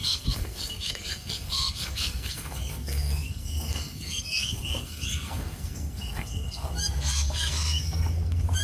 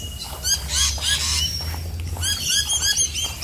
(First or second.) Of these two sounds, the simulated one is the first